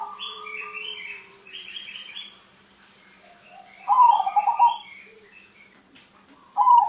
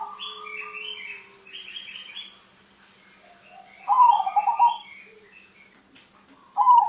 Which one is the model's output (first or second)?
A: first